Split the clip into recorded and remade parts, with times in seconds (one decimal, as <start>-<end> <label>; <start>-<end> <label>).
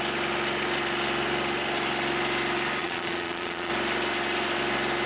0.0-2.8 recorded; 2.8-3.7 remade; 3.7-5.1 recorded